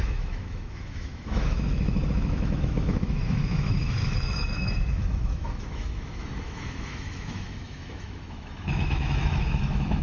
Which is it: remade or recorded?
remade